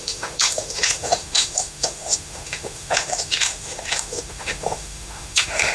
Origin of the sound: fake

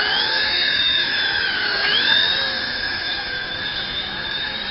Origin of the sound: fake